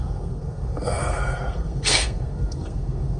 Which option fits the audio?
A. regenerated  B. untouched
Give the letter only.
A